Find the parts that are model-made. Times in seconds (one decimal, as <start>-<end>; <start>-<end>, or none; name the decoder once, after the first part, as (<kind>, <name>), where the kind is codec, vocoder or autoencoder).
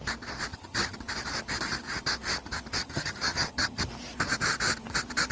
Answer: 0.5-1.0 (vocoder, HiFi-GAN); 2.8-3.8